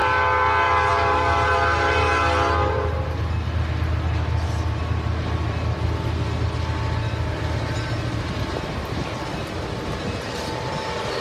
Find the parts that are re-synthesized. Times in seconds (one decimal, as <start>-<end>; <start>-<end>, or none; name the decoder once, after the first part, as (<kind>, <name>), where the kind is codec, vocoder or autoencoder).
none